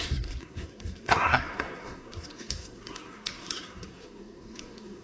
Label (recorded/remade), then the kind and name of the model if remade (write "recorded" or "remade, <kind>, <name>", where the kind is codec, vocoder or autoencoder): remade, codec, SNAC